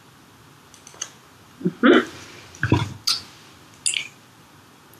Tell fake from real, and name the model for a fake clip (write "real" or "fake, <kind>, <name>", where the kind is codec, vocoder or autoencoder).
real